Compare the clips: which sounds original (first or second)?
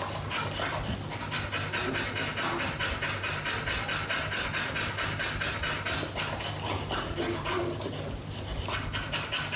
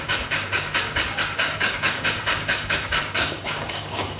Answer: first